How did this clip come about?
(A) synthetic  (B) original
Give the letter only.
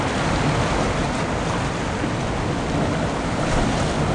B